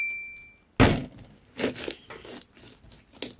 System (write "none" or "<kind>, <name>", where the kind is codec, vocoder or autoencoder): none